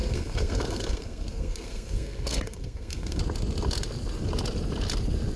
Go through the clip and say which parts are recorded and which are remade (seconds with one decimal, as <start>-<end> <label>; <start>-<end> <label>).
0.0-3.2 remade; 3.2-5.4 recorded